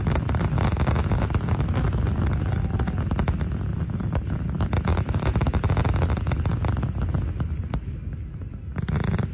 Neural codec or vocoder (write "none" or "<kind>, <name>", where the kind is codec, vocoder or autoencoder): none